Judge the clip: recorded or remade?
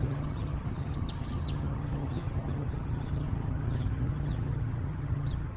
remade